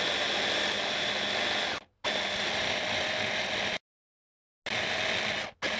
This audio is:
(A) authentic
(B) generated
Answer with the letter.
A